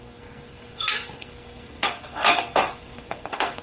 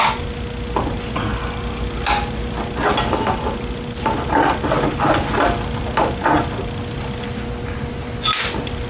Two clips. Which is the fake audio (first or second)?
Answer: first